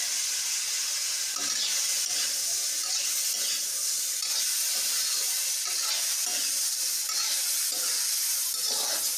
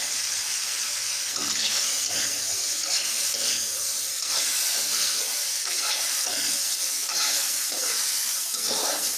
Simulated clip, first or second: second